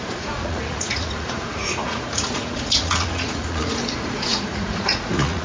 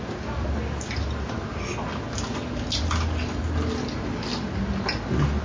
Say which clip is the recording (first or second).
second